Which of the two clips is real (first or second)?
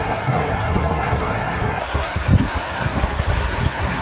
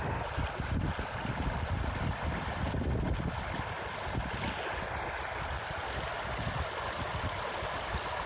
second